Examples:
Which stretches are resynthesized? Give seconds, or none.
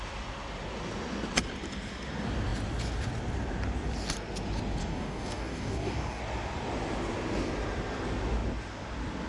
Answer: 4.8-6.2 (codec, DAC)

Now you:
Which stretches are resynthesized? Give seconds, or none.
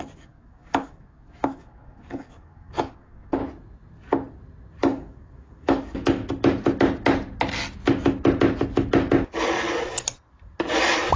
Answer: 0.0-3.4 (codec, DAC); 4.8-6.2